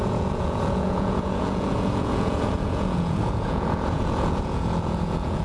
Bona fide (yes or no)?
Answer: no